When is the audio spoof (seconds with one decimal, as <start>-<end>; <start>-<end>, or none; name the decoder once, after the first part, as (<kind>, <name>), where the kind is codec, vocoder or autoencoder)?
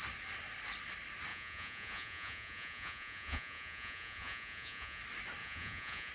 1.3-5.0 (vocoder, Vocos); 5.4-6.1